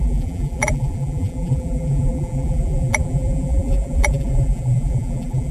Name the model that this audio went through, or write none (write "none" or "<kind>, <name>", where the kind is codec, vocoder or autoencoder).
vocoder, BigVGAN v2